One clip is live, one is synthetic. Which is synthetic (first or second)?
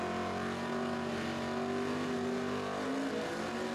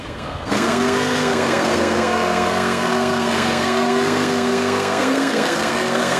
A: second